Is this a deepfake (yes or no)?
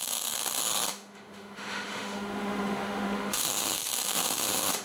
yes